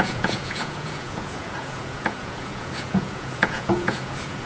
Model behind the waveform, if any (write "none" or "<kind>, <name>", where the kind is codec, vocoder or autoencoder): vocoder, Vocos